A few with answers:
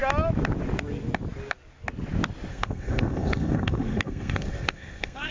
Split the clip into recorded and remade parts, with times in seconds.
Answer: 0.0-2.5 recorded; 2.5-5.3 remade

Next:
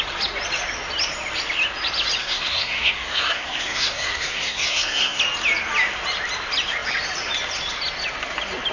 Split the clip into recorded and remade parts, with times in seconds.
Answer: 0.0-2.2 recorded; 2.2-5.2 remade; 5.2-8.7 recorded

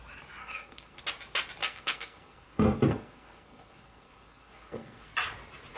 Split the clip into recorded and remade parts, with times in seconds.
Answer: 0.0-0.4 recorded; 0.4-1.0 remade; 1.0-1.6 recorded; 1.6-5.1 remade; 5.1-5.8 recorded

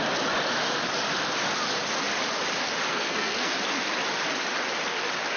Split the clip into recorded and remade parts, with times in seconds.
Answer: 0.0-2.9 recorded; 2.9-3.6 remade; 3.6-5.4 recorded